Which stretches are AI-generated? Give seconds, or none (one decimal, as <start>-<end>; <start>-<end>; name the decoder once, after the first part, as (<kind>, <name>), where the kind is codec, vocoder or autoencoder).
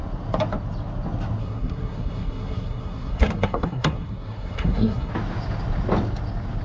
1.4-5.1 (codec, SNAC)